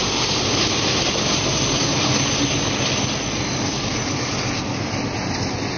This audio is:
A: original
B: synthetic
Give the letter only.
A